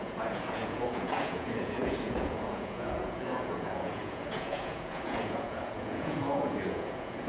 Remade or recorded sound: remade